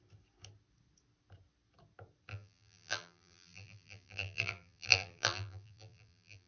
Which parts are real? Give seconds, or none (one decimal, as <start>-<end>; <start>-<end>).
0.0-2.3